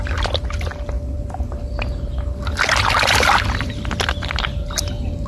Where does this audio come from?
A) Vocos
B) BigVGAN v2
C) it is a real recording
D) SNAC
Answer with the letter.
C